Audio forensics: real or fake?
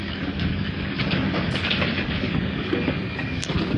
fake